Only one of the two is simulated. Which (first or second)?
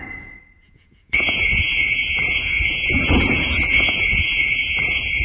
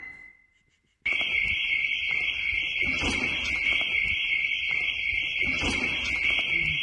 first